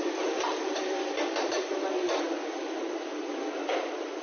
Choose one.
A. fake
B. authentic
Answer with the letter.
B